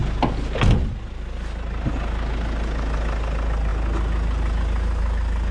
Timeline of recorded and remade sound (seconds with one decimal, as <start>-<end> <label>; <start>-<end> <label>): 0.0-5.5 recorded